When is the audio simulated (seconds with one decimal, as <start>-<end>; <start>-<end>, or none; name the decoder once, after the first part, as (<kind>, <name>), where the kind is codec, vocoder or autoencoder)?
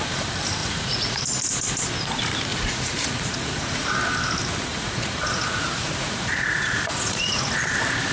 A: 0.6-1.2 (vocoder, Vocos); 2.5-3.9; 4.7-7.5